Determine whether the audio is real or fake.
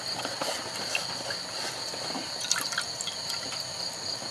fake